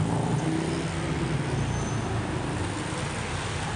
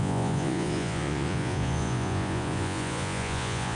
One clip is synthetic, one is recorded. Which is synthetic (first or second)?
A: second